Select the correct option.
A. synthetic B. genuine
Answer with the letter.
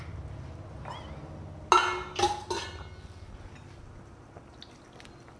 B